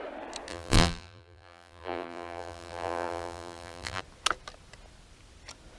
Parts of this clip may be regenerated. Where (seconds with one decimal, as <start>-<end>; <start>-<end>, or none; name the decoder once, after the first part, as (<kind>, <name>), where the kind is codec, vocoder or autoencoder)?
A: 0.5-4.0 (vocoder, BigVGAN v2)

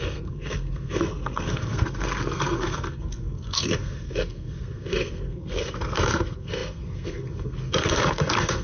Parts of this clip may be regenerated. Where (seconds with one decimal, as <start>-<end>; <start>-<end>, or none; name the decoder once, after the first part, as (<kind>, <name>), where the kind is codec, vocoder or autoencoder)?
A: 0.0-8.6 (codec, SNAC)

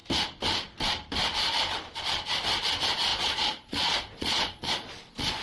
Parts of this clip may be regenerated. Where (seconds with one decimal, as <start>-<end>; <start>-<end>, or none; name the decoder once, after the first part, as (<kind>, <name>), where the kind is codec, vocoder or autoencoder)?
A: 3.1-5.4 (vocoder, Vocos)

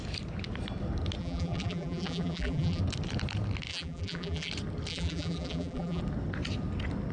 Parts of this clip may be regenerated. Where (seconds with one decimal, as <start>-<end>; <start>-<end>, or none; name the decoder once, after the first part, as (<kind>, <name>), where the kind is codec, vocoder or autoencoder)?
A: 1.2-2.8 (vocoder, BigVGAN v2); 3.7-4.5; 4.9-6.0

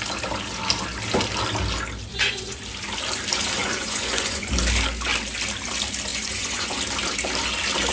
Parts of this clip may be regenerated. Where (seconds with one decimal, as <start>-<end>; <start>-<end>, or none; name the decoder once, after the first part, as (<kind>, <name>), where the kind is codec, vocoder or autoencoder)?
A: 2.1-2.6 (vocoder, Vocos); 3.6-4.5; 6.1-6.8